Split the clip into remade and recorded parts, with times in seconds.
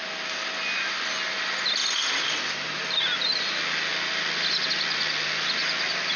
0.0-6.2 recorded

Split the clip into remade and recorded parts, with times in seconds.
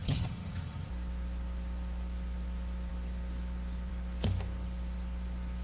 0.0-0.9 remade; 0.9-5.6 recorded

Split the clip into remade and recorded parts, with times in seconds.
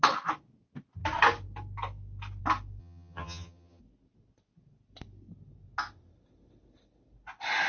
0.0-2.8 recorded; 2.8-3.8 remade; 3.8-7.7 recorded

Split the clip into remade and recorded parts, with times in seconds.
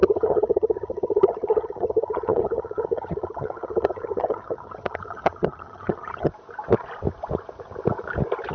0.0-6.3 remade; 6.3-8.5 recorded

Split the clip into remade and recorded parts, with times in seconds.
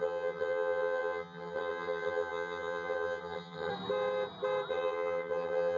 0.0-3.7 remade; 3.7-4.7 recorded; 4.7-5.8 remade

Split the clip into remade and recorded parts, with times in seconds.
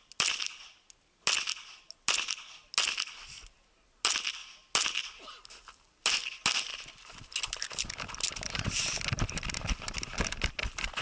0.0-11.0 recorded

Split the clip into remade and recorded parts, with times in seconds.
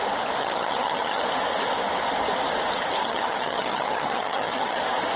0.0-0.4 recorded; 0.4-1.2 remade; 1.2-3.0 recorded; 3.0-4.8 remade; 4.8-5.2 recorded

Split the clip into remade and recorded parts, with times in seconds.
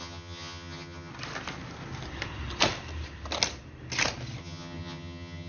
0.0-1.1 remade; 1.1-4.4 recorded; 4.4-5.5 remade